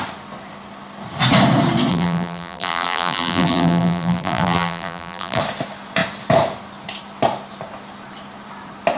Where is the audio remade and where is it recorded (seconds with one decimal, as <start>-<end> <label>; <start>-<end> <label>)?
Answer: 0.0-1.9 recorded; 1.9-5.4 remade; 5.4-9.0 recorded